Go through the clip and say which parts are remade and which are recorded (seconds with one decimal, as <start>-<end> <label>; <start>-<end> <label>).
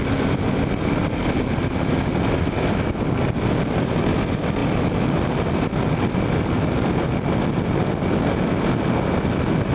0.0-9.7 recorded